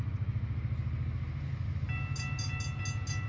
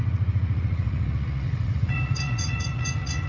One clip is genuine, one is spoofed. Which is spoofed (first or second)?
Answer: second